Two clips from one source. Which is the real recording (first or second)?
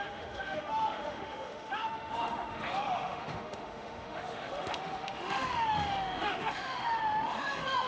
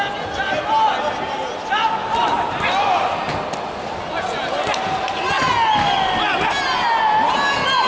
second